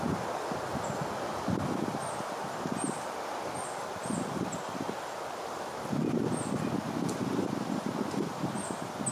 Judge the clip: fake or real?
real